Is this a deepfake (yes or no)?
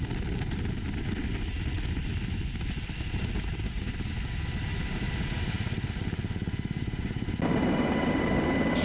no